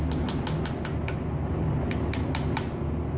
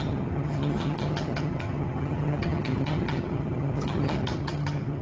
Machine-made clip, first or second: second